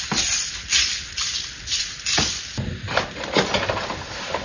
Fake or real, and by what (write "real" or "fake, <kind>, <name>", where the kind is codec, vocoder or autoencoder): real